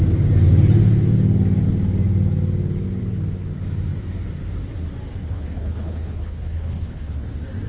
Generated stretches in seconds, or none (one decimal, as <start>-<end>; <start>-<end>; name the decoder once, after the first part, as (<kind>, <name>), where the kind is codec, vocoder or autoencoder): 5.2-7.3 (codec, HILCodec)